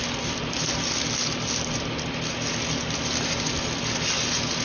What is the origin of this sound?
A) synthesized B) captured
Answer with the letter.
B